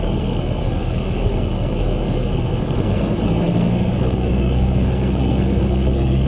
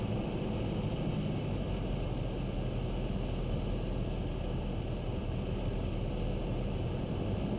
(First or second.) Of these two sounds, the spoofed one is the first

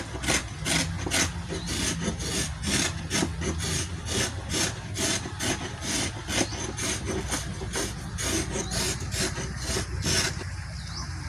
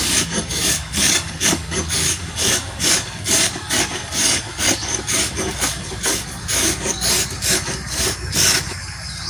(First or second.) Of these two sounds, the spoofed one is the second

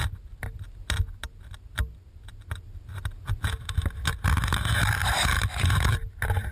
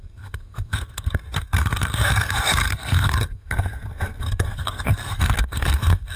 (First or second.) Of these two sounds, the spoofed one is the second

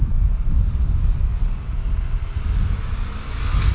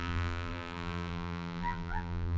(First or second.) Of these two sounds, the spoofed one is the second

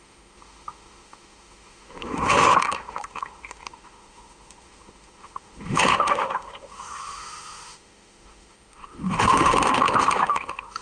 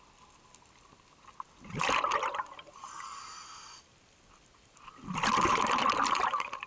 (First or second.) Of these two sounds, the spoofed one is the first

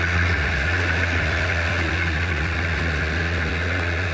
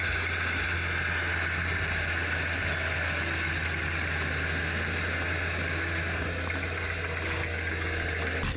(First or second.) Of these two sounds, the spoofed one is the first